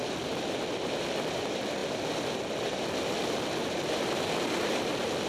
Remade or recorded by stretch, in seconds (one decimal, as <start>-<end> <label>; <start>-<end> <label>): 0.0-5.3 recorded